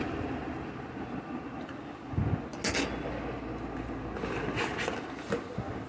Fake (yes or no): no